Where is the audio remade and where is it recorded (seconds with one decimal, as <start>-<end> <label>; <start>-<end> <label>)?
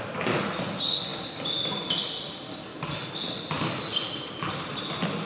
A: 0.0-5.3 recorded